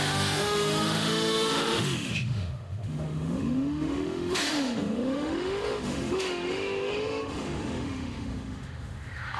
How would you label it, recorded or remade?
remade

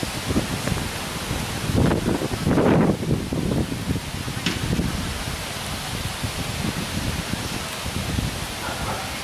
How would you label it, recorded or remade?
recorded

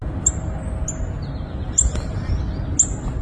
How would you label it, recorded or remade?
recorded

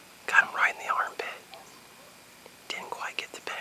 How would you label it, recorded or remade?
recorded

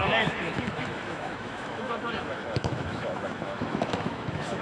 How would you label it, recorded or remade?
remade